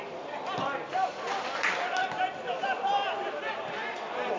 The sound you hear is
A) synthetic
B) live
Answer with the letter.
B